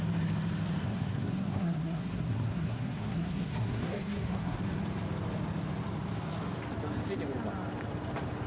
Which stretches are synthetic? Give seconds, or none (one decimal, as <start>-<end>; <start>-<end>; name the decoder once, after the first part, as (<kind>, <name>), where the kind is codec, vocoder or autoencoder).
0.8-4.6 (codec, SNAC)